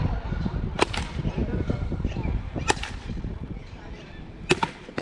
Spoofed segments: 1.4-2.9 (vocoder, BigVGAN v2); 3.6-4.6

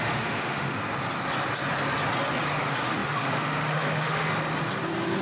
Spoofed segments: 0.0-0.8 (autoencoder, DAC-VAE); 2.6-4.3